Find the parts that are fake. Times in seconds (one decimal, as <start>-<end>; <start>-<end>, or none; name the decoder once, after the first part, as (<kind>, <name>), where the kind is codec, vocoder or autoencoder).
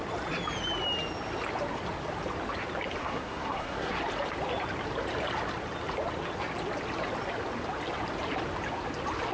3.0-4.0 (codec, SNAC)